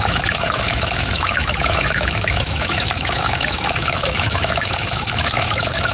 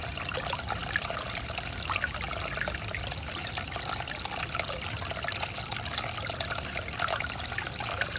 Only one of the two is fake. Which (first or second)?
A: first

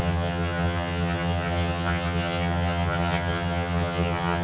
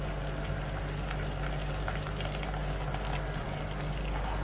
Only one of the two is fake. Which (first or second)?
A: first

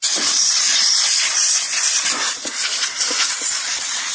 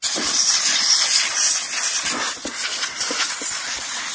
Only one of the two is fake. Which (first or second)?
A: first